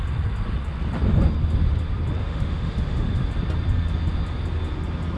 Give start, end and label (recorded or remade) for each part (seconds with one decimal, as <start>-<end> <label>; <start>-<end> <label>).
0.0-2.2 recorded; 2.2-3.3 remade; 3.3-5.2 recorded